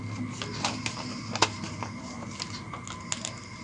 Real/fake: real